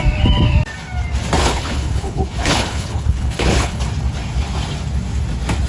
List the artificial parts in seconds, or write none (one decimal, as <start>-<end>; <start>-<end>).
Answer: 1.4-3.8